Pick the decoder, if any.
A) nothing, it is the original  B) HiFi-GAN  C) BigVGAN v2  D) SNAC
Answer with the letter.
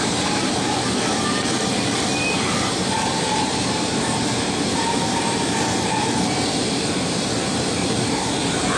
C